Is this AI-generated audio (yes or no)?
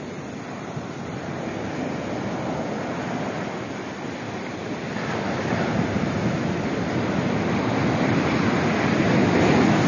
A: no